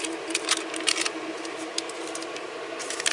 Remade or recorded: remade